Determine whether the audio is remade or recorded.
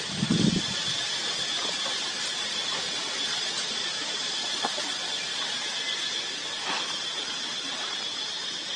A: recorded